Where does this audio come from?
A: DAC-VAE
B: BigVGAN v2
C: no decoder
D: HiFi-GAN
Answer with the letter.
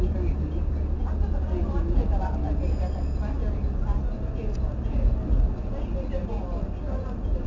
C